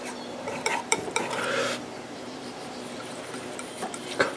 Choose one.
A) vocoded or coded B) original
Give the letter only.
A